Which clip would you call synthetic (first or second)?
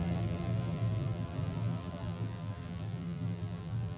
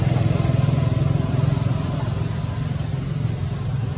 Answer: first